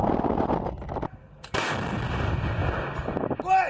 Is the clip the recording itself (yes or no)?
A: yes